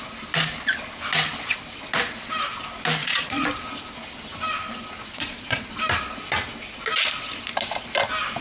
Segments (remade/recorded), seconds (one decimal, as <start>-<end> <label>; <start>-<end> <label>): 0.0-3.0 recorded; 3.0-3.5 remade; 3.5-5.1 recorded; 5.1-5.7 remade; 5.7-8.4 recorded